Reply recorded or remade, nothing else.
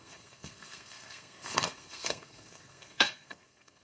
remade